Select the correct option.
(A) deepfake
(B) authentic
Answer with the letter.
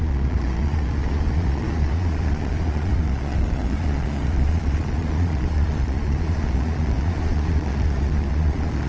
A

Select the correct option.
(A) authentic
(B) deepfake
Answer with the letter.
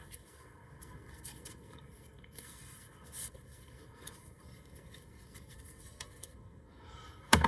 B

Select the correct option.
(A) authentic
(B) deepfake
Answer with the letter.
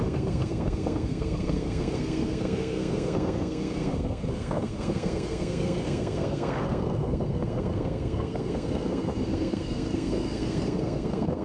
B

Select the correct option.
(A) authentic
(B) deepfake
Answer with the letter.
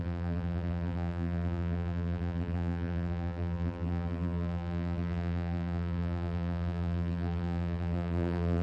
B